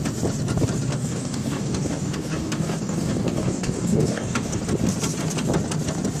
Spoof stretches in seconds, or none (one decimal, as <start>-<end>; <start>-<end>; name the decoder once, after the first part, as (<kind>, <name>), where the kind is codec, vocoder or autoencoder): 0.9-4.6 (codec, DAC)